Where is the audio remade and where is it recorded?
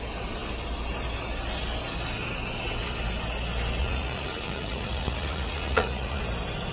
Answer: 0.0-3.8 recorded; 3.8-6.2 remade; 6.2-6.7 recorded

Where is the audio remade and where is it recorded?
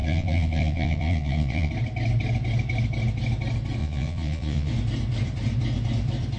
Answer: 0.0-1.7 remade; 1.7-3.8 recorded; 3.8-4.7 remade; 4.7-6.4 recorded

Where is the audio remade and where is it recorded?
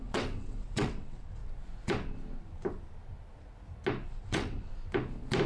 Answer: 0.0-1.4 remade; 1.4-4.1 recorded; 4.1-4.7 remade; 4.7-5.5 recorded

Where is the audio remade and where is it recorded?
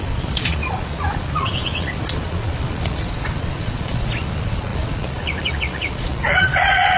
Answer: 0.0-7.0 remade